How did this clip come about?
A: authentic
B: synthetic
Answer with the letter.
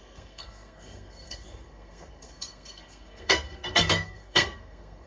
B